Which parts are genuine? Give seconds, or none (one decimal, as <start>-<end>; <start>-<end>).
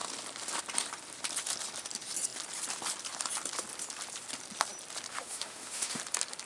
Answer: 0.0-5.1; 6.0-6.5